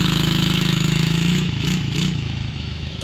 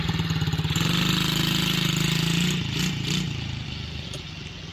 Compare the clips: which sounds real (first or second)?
second